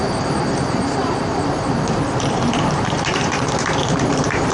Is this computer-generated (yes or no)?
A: yes